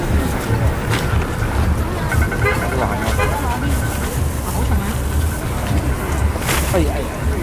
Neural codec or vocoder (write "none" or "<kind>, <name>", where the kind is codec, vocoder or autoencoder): none